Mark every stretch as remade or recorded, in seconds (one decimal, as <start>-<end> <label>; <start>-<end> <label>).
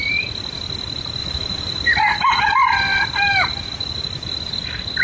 0.0-1.2 recorded; 1.2-2.0 remade; 2.0-5.0 recorded